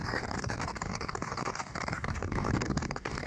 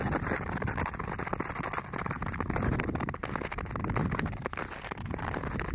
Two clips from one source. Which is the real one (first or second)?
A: second